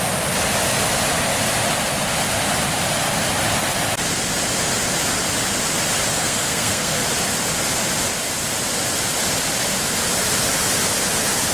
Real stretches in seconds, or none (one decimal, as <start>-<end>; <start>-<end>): 0.0-6.2; 7.0-11.5